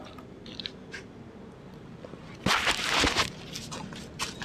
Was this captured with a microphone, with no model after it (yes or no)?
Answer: yes